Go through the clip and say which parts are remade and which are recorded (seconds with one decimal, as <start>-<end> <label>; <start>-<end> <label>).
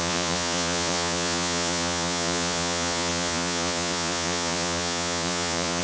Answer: 0.0-5.8 remade